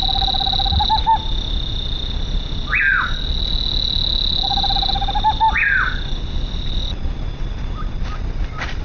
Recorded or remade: recorded